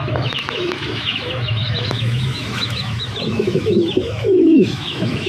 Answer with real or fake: fake